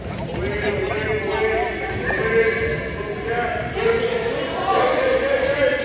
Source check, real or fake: real